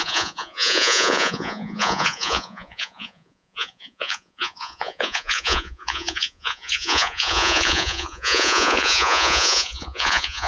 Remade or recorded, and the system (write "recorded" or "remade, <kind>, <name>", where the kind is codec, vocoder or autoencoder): remade, vocoder, Vocos